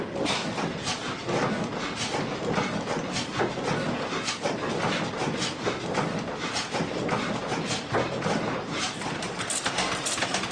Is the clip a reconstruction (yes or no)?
no